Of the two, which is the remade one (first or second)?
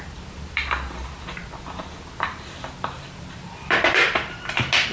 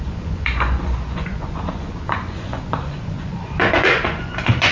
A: second